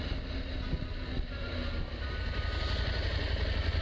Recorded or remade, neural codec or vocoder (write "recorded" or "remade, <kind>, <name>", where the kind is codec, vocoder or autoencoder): recorded